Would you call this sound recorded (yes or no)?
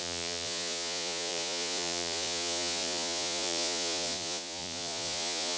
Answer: no